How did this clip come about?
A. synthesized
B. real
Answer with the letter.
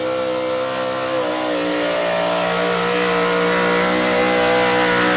B